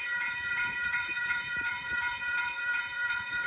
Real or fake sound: fake